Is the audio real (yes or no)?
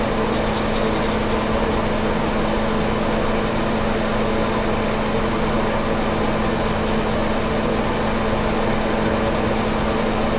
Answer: yes